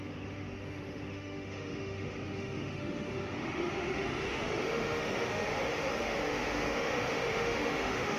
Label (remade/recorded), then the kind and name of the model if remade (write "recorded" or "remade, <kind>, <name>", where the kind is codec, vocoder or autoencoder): remade, autoencoder, DAC-VAE